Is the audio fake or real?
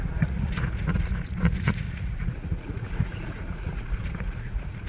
fake